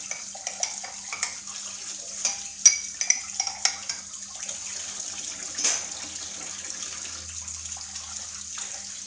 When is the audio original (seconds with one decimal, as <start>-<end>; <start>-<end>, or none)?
0.0-9.1

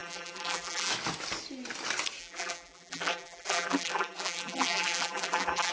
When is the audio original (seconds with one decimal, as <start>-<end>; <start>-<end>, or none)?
0.9-2.2

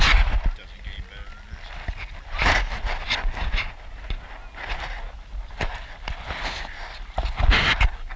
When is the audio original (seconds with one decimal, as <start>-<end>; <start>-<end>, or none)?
0.0-8.2

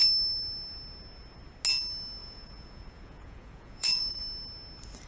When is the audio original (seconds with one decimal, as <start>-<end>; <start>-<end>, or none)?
0.0-2.2; 4.2-5.1

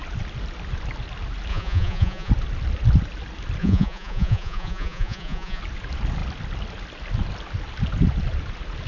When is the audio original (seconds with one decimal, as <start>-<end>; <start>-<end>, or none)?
0.0-1.5; 2.3-3.6; 5.6-8.9

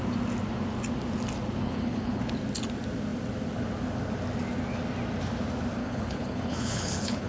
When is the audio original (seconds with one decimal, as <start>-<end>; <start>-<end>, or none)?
0.0-1.6; 2.2-5.8

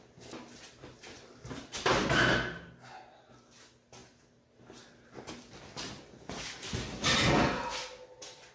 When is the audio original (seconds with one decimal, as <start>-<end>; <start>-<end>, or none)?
0.0-8.5

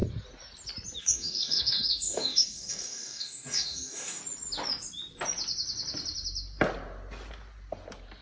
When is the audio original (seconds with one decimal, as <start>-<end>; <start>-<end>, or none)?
0.0-1.0; 4.2-8.2